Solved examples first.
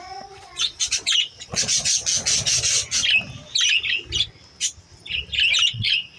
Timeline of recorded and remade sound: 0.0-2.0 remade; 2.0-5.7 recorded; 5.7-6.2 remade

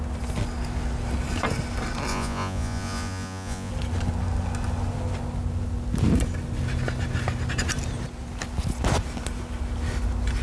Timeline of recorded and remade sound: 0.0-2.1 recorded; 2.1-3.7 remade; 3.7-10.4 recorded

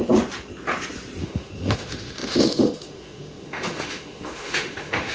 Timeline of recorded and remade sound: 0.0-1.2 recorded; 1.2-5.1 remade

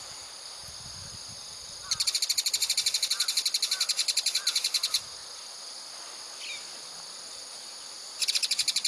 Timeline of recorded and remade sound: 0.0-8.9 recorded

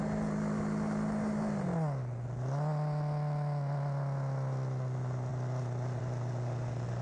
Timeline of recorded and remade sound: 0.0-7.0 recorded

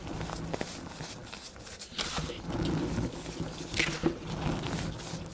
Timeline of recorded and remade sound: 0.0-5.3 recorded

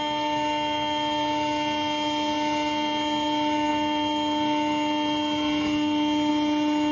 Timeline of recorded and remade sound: 0.0-6.9 recorded